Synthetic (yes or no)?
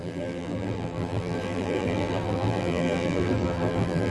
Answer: yes